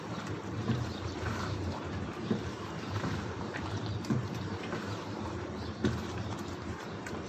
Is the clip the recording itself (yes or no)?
no